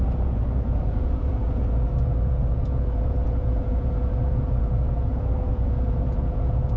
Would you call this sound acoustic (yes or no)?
no